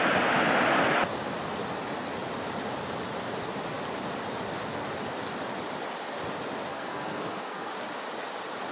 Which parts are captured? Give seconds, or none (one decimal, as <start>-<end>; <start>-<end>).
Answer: 0.0-6.7; 7.7-8.7